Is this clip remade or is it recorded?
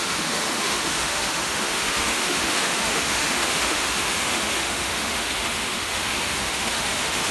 remade